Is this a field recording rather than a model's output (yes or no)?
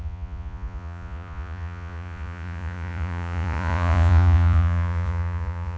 no